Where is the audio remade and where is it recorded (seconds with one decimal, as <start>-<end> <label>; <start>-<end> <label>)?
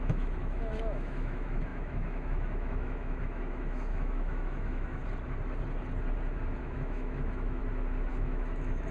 0.0-5.0 remade; 5.0-6.6 recorded; 6.6-7.6 remade; 7.6-8.1 recorded; 8.1-8.9 remade